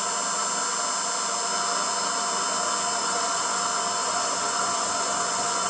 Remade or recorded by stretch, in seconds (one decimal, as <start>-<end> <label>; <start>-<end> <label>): 0.0-3.0 recorded; 3.0-3.6 remade; 3.6-4.0 recorded; 4.0-5.7 remade